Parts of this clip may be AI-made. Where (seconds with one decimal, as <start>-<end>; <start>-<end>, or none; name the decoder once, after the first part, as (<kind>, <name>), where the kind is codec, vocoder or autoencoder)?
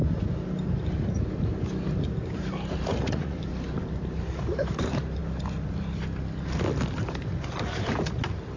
2.9-3.4 (vocoder, Vocos)